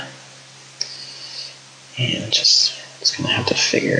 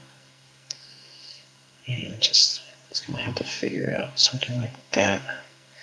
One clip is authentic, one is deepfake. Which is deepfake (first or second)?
second